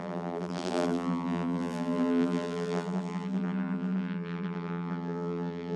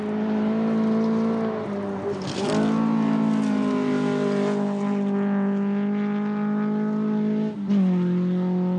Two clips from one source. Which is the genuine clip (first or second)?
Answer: second